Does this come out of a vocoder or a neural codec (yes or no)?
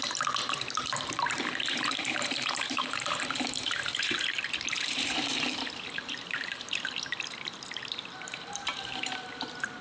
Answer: yes